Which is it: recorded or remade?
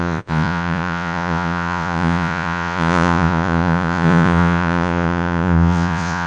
remade